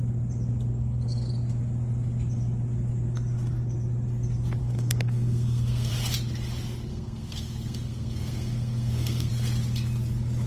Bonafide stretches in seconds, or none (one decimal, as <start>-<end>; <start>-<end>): 0.0-0.7; 1.3-4.6; 5.9-6.9; 9.3-10.5